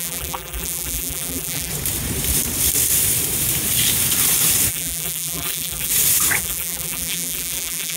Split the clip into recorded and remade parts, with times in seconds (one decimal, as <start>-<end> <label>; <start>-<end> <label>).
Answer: 0.0-1.7 remade; 1.7-4.7 recorded; 4.7-5.9 remade; 5.9-6.4 recorded; 6.4-8.0 remade